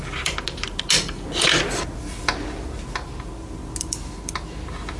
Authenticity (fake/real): real